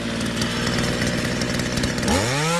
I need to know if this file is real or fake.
real